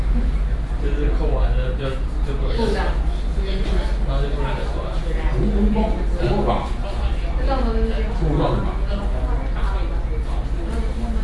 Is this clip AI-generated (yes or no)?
no